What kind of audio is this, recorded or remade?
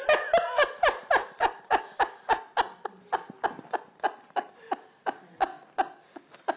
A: recorded